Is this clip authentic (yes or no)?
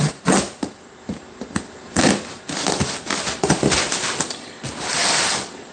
yes